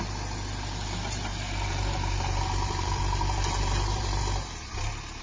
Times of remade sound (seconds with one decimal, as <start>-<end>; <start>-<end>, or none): 1.3-4.2